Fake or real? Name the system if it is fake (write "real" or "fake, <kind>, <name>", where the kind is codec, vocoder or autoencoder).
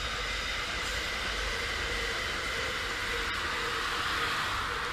real